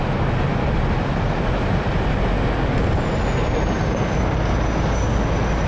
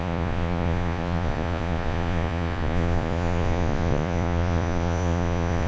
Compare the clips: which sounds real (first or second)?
first